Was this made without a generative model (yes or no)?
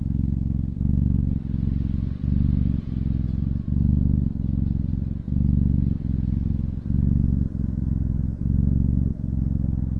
yes